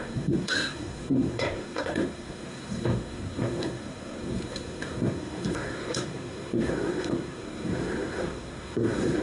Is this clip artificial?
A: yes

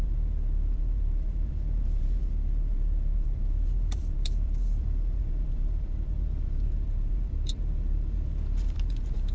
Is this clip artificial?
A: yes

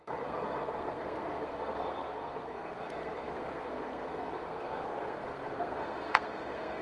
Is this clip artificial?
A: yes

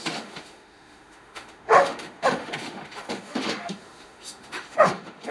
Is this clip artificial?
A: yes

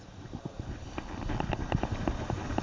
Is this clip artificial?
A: no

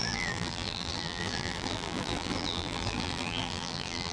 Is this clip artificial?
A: yes